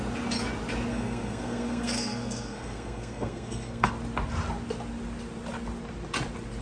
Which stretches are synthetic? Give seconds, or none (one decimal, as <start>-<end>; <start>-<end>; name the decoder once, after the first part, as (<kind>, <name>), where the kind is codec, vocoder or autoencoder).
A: 0.9-3.9 (codec, SNAC)